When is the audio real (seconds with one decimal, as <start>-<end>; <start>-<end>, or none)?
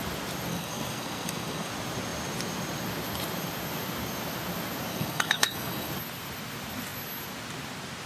0.0-0.5; 1.7-4.9; 5.9-8.1